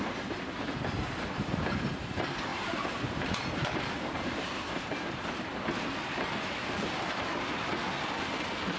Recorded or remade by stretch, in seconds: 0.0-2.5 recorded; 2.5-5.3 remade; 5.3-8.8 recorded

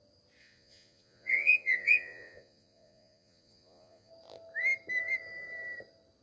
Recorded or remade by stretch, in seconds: 0.0-0.4 recorded; 0.4-4.1 remade; 4.1-6.2 recorded

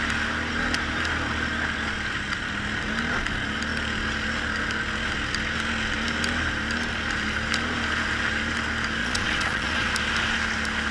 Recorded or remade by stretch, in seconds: 0.0-9.0 recorded; 9.0-9.9 remade; 9.9-10.9 recorded

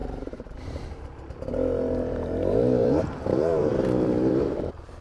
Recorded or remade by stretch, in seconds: 0.0-5.0 remade

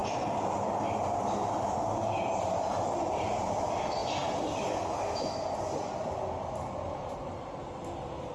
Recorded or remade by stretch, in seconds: 0.0-8.3 recorded

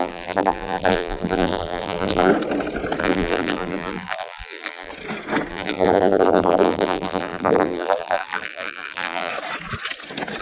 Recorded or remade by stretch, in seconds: 0.0-2.3 remade; 2.3-3.0 recorded; 3.0-4.9 remade; 4.9-5.5 recorded; 5.5-9.3 remade; 9.3-10.4 recorded

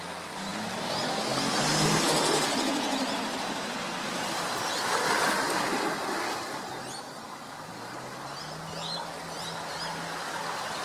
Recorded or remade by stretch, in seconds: 0.0-10.8 recorded